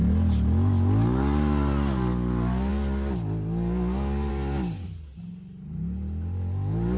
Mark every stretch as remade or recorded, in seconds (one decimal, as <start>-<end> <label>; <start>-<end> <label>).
0.0-7.0 recorded